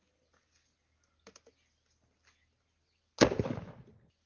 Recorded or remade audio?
recorded